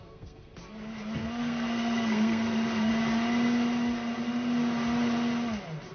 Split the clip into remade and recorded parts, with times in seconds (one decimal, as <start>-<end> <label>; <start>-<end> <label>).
0.0-0.5 remade; 0.5-1.2 recorded; 1.2-2.9 remade; 2.9-5.9 recorded